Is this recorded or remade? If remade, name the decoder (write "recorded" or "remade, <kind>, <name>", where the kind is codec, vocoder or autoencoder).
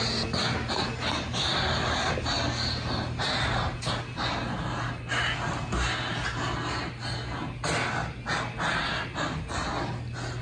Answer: recorded